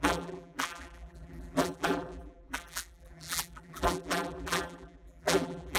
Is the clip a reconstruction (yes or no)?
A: yes